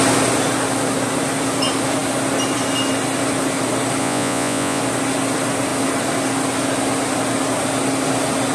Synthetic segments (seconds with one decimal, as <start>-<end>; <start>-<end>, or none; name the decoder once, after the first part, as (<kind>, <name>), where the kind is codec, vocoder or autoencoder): 4.0-4.8 (vocoder, Vocos)